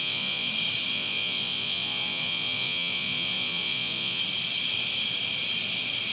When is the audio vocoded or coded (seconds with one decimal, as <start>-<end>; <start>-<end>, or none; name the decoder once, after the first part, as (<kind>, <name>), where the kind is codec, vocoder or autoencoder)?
0.0-0.5 (vocoder, Vocos); 0.9-4.2